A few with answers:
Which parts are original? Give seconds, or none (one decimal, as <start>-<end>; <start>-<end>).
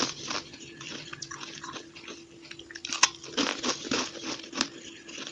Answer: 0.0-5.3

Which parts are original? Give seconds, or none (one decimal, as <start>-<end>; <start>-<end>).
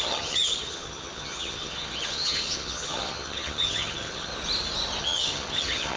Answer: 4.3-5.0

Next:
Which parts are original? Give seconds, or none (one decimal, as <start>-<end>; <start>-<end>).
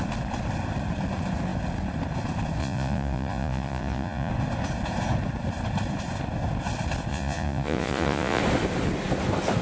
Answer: 0.0-2.6; 4.3-7.1; 8.4-9.6